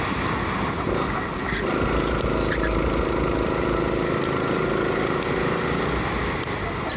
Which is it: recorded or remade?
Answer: recorded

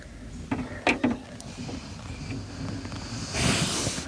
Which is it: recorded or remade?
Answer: recorded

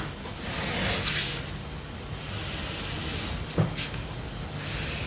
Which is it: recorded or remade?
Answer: recorded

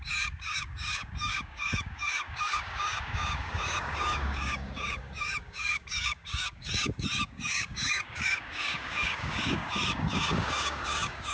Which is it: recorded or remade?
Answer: remade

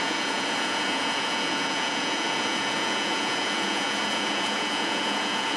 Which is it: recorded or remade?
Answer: remade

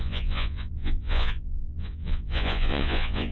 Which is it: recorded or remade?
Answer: remade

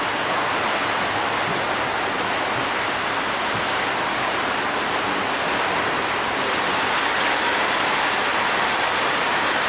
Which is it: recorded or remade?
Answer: recorded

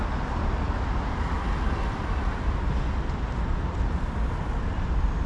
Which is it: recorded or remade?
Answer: recorded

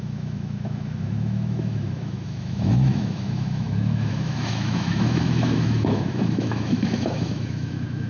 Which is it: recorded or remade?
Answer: remade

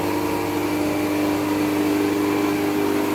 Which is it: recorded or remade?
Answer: recorded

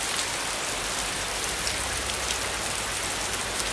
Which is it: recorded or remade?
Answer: recorded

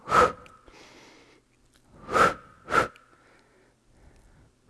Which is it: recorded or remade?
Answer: recorded